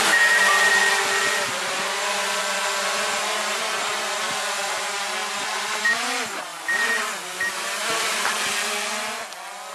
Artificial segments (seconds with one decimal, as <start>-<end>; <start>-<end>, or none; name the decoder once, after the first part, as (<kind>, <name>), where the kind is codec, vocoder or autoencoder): 0.0-8.3 (vocoder, BigVGAN v2)